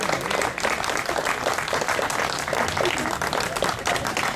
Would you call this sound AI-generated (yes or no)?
no